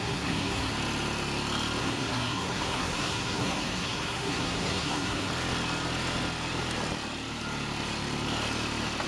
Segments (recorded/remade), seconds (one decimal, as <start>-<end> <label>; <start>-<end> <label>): 0.0-0.7 remade; 0.7-1.8 recorded; 1.8-5.3 remade; 5.3-9.1 recorded